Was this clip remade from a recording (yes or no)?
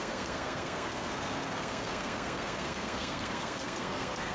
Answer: yes